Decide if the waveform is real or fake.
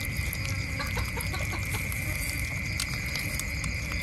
real